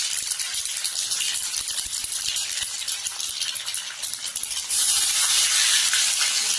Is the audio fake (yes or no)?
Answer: yes